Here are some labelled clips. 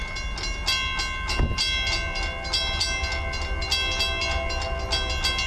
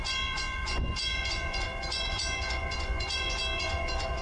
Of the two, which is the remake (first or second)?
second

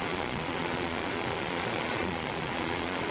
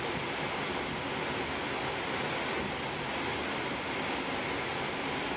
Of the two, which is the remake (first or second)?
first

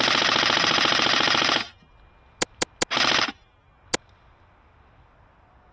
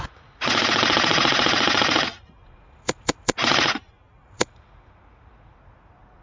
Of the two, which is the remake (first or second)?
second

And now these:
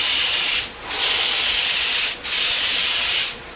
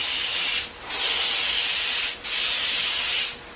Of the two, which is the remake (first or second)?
first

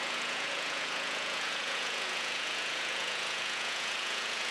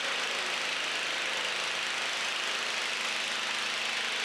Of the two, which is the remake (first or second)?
first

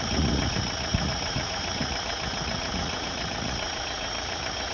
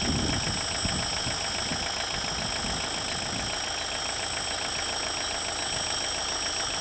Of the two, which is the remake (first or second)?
first